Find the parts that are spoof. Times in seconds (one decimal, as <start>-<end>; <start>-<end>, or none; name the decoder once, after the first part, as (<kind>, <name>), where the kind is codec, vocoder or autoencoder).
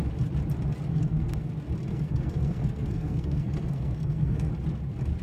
0.9-1.5 (codec, SNAC); 1.9-4.5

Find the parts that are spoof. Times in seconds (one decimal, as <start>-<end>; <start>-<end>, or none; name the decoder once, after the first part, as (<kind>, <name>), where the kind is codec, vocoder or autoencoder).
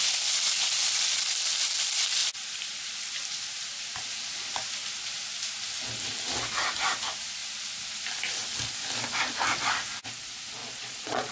10.6-11.3 (vocoder, Vocos)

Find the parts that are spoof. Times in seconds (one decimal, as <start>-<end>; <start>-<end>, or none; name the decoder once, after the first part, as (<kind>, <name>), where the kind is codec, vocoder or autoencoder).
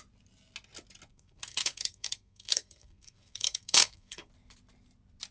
1.1-4.3 (codec, SNAC)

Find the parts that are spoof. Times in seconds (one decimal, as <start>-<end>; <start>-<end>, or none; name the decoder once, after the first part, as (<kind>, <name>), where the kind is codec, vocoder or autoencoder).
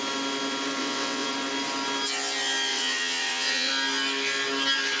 0.8-1.3 (vocoder, WaveNeXt); 2.7-3.7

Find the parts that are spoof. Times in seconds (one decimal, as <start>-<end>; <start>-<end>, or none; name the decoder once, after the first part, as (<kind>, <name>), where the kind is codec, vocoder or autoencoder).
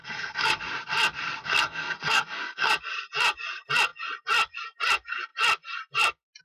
0.0-0.6 (codec, SNAC); 1.4-2.7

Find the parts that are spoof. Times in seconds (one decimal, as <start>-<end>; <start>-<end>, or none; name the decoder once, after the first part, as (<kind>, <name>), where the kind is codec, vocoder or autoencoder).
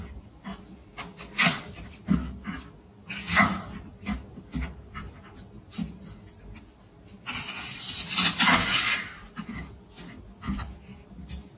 none